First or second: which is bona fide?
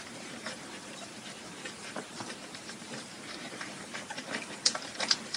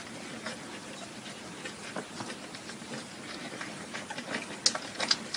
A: second